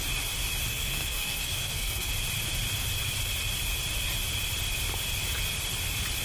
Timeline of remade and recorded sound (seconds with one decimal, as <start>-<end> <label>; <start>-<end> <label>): 0.0-0.7 recorded; 0.7-2.1 remade; 2.1-6.2 recorded